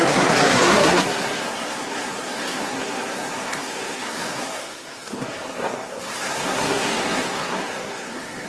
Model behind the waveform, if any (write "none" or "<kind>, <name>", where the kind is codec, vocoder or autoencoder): codec, SNAC